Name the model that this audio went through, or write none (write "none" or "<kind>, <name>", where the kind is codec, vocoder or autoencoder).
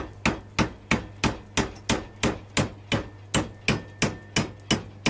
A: none